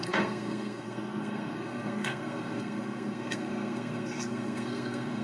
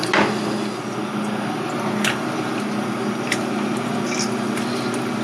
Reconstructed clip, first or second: first